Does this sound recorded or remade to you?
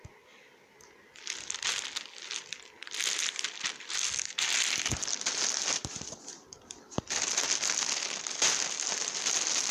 recorded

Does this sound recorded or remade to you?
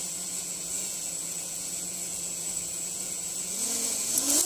remade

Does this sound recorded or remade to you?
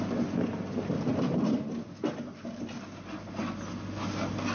recorded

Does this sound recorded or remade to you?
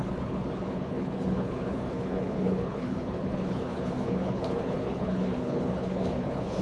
remade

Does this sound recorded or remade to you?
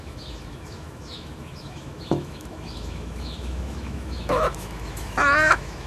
remade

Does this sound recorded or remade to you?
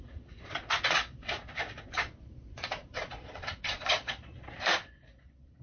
remade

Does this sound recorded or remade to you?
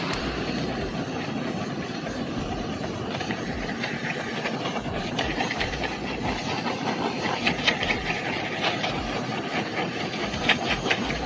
remade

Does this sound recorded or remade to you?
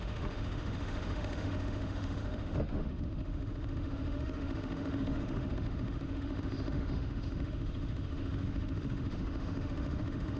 remade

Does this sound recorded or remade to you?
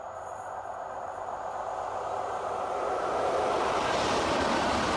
recorded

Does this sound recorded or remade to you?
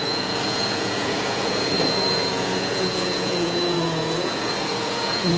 remade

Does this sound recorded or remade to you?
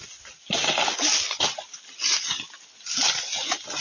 recorded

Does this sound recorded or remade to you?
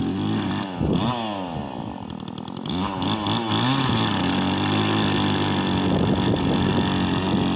recorded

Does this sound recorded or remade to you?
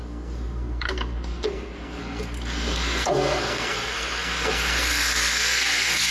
remade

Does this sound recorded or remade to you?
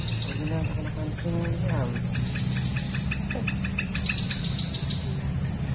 recorded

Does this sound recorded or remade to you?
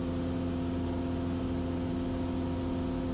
recorded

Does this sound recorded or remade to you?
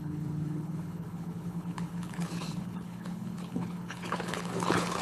remade